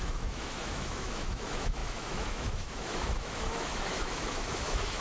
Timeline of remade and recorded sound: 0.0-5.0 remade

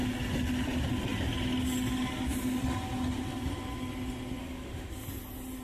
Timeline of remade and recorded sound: 0.0-4.4 recorded; 4.4-4.9 remade; 4.9-5.6 recorded

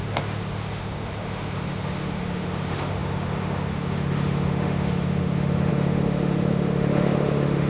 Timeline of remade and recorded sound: 0.0-7.7 remade